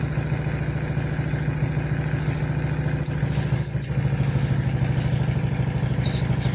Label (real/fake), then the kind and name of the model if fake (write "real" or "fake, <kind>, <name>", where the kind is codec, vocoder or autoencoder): real